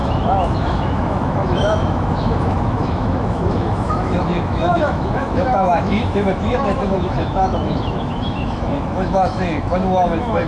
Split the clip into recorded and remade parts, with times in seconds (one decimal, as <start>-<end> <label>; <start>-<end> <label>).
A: 0.0-10.5 remade